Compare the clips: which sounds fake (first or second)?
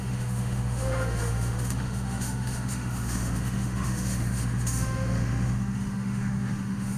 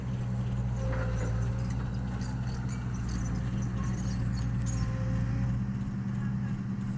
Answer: first